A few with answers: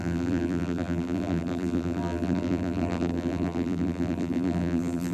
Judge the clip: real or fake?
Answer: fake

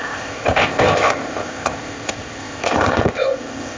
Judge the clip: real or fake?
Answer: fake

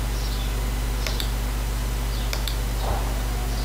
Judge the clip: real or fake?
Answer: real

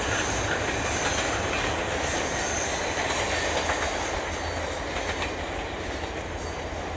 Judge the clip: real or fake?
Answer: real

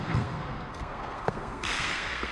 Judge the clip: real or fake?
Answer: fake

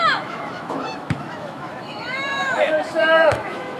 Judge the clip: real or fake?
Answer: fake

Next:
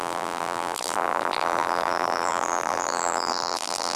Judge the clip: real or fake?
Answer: fake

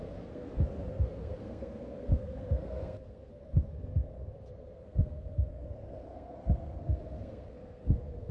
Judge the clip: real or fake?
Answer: fake